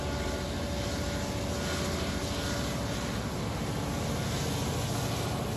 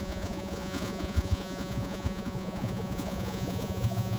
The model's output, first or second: second